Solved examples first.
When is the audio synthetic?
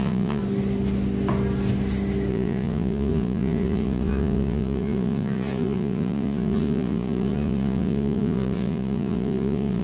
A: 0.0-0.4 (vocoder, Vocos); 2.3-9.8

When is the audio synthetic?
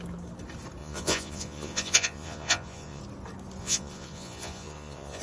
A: 0.8-3.0 (vocoder, Vocos); 3.6-5.2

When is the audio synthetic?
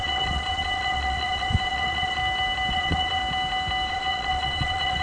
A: 0.0-2.2 (vocoder, Vocos); 2.7-3.2; 3.9-5.0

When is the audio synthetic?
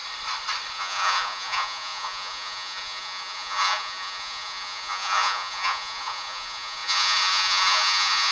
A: 0.7-8.3 (vocoder, Vocos)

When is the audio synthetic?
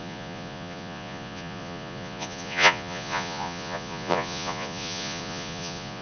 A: 0.0-6.0 (vocoder, Vocos)